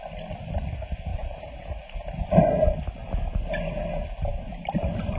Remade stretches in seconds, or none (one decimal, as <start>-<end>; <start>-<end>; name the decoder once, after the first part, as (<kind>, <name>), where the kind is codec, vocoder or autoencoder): 1.1-1.8 (vocoder, BigVGAN v2); 4.3-5.2